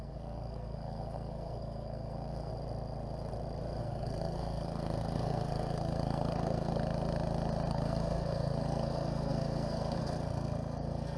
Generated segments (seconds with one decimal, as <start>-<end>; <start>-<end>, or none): 0.0-2.5; 3.8-6.7; 7.7-11.2